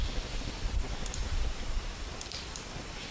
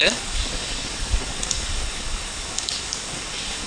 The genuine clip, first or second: first